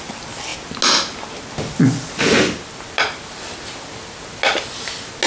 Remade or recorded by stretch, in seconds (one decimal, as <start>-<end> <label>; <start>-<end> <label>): 0.0-5.3 recorded

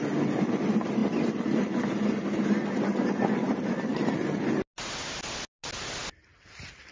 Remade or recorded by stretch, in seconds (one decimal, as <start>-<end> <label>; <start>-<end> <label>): 0.0-6.9 recorded